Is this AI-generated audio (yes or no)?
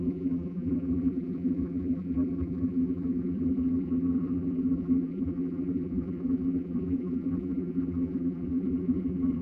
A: yes